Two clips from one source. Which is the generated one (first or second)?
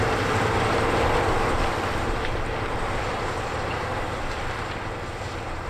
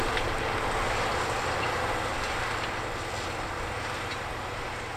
first